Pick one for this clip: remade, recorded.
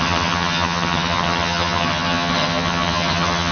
remade